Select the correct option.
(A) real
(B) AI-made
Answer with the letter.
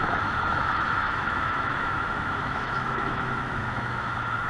B